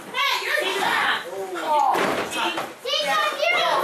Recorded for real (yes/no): yes